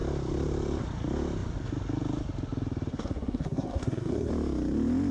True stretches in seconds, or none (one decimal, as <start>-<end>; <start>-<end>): 0.0-2.9; 4.3-5.1